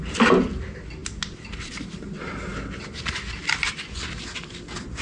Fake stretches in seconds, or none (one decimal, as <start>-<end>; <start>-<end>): none